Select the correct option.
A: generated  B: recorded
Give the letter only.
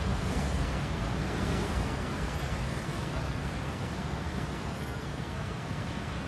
A